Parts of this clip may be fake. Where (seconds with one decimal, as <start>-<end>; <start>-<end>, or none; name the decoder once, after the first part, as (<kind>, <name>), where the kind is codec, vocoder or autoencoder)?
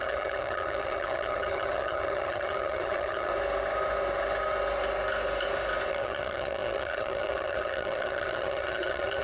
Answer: 0.0-3.3 (vocoder, HiFi-GAN); 5.9-9.2